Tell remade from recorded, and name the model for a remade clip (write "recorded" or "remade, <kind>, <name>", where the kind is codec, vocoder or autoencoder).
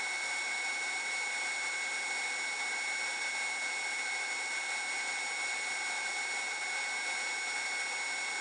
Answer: recorded